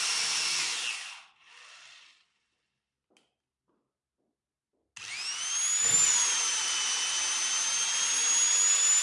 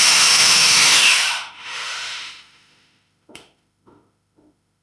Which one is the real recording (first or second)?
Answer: first